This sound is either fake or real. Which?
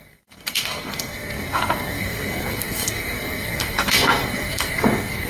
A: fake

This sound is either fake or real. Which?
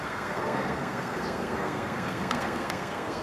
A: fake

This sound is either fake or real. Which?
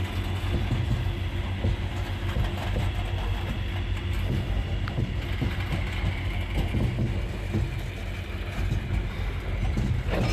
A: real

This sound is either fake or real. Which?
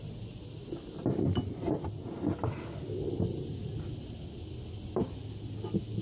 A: real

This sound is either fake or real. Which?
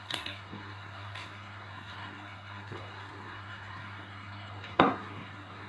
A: fake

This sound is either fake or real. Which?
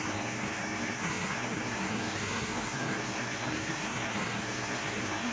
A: fake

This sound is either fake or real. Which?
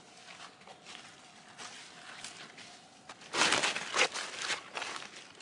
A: real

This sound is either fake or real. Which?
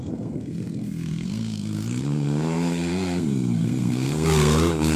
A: fake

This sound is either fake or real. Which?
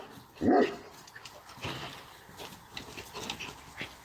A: real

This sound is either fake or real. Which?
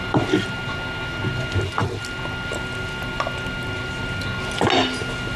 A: real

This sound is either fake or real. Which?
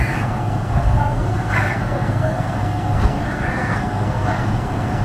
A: fake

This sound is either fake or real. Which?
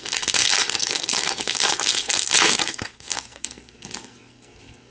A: fake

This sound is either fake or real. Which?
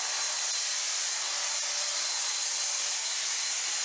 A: real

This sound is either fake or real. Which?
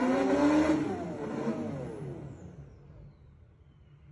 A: real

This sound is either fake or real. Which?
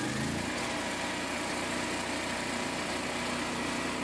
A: real